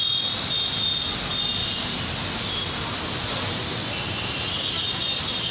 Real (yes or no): yes